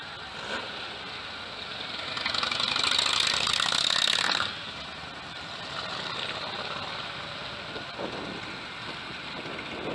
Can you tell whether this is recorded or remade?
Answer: recorded